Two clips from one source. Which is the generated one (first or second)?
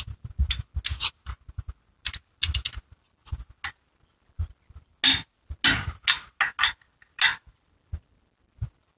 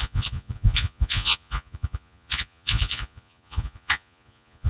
second